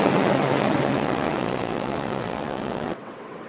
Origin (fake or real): fake